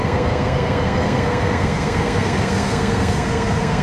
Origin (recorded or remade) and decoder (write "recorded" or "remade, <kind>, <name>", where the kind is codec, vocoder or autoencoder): remade, codec, SNAC